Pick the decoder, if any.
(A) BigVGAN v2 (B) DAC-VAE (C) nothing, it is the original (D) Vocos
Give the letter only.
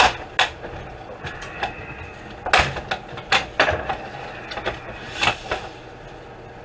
C